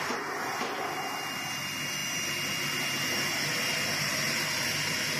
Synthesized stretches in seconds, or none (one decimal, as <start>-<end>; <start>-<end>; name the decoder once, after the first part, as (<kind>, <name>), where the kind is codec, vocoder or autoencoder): none